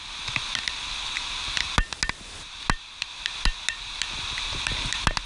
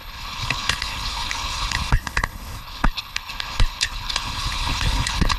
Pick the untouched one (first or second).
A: first